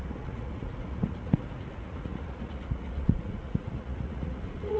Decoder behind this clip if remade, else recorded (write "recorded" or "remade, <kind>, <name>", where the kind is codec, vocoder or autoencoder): remade, vocoder, Vocos